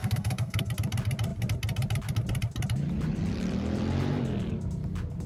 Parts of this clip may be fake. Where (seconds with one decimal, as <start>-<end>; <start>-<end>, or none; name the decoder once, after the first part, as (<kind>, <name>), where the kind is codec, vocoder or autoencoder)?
0.0-0.7 (codec, SNAC)